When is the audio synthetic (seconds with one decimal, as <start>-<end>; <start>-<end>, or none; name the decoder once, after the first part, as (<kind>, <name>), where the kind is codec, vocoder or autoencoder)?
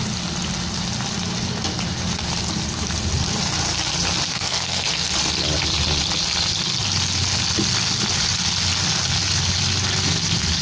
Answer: 4.3-5.1 (codec, SNAC)